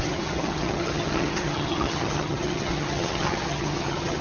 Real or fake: fake